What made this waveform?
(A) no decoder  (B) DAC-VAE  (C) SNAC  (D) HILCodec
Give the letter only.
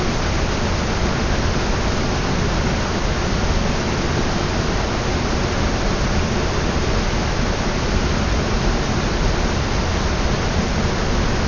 A